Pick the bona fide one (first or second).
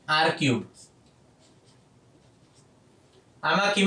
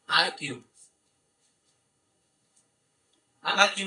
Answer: first